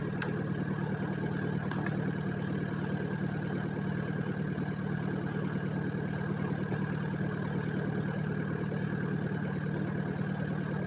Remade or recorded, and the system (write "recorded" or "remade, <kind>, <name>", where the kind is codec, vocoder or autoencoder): recorded